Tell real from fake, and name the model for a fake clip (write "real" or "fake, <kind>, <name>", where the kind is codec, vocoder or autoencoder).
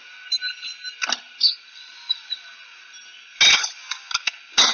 real